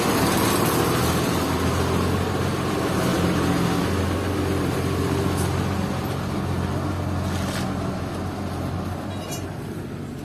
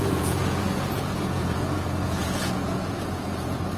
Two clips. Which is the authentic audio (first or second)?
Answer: first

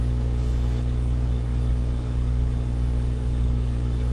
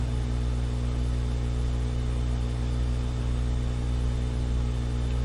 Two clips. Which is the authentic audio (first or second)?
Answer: second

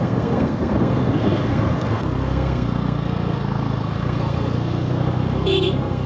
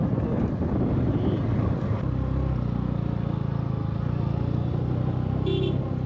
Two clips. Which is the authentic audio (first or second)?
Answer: second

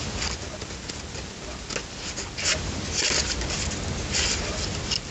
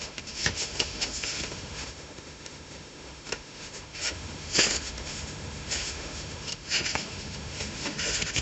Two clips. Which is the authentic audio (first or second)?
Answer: first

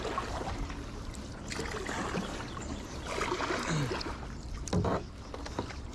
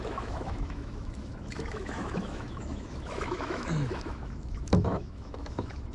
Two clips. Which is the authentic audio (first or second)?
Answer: first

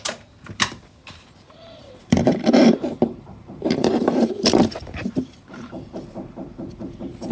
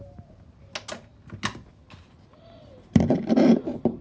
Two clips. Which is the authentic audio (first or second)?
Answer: second